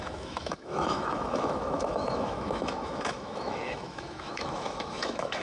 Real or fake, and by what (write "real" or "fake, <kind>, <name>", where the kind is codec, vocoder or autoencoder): fake, autoencoder, DAC-VAE